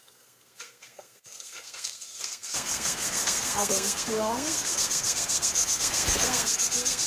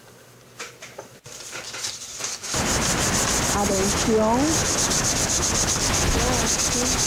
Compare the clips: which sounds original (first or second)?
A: second